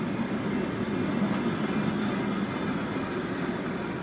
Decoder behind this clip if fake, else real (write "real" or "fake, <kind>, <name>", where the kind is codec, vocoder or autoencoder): real